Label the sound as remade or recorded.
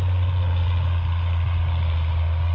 recorded